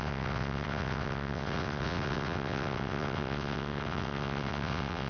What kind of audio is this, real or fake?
fake